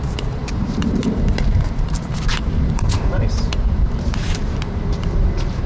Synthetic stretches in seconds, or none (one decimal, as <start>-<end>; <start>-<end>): 0.0-5.7